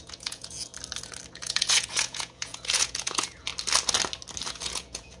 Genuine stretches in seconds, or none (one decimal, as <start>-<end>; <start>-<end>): 0.7-1.3; 3.5-4.5